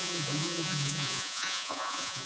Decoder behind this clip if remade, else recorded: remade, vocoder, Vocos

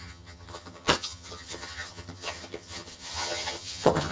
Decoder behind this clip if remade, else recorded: remade, vocoder, HiFi-GAN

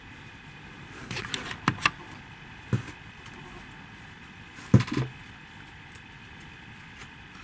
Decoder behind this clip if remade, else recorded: recorded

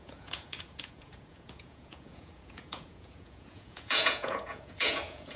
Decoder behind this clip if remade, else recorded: remade, vocoder, Vocos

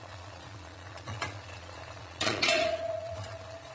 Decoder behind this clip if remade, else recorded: remade, vocoder, Vocos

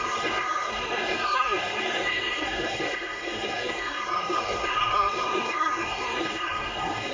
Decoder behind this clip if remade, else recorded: remade, codec, SNAC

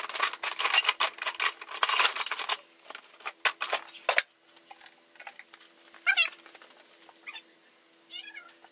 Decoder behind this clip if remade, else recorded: recorded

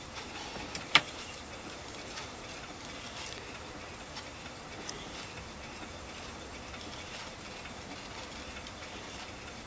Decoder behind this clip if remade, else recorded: remade, vocoder, BigVGAN v2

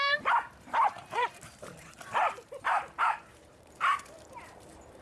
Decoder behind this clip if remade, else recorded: remade, vocoder, BigVGAN v2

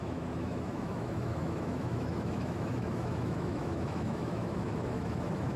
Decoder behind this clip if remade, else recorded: remade, autoencoder, DAC-VAE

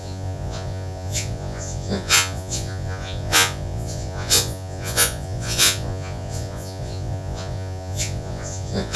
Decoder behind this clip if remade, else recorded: remade, vocoder, Vocos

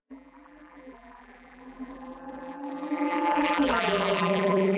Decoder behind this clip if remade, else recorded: remade, vocoder, BigVGAN v2